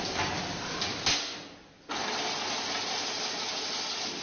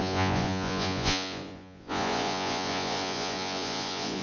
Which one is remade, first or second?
second